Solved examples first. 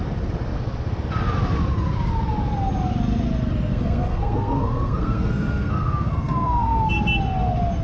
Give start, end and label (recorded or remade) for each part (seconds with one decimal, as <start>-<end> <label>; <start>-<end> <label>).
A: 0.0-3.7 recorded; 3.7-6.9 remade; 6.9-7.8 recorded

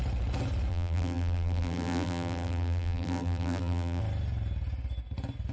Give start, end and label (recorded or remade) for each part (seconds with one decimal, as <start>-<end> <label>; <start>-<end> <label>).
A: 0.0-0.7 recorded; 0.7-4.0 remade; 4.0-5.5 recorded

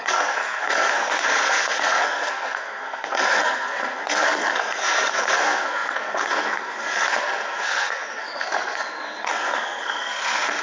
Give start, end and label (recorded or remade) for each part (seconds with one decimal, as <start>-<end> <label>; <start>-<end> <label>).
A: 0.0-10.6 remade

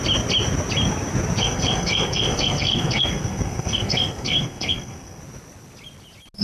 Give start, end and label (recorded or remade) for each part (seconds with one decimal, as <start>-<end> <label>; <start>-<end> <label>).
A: 0.0-1.4 recorded; 1.4-5.2 remade; 5.2-6.4 recorded

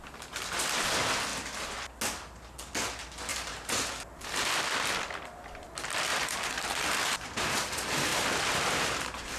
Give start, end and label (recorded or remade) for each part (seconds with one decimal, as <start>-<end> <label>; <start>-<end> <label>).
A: 0.0-3.3 recorded; 3.3-3.9 remade; 3.9-6.1 recorded; 6.1-7.4 remade; 7.4-8.1 recorded; 8.1-9.4 remade

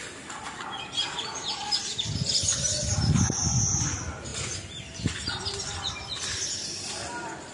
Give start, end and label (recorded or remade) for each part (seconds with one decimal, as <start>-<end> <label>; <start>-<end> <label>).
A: 0.0-7.5 recorded